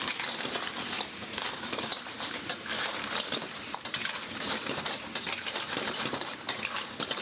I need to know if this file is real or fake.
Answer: fake